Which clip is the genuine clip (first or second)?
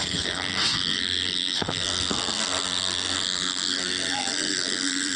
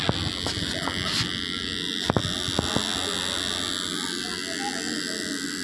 second